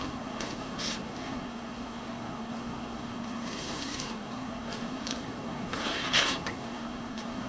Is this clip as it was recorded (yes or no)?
no